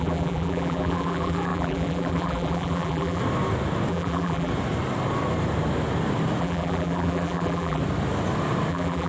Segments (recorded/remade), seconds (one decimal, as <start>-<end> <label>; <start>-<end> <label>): 0.0-3.2 remade; 3.2-3.9 recorded; 3.9-4.5 remade; 4.5-6.4 recorded; 6.4-7.8 remade; 7.8-8.7 recorded; 8.7-9.1 remade